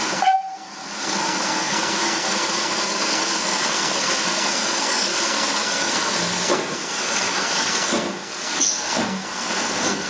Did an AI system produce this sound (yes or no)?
yes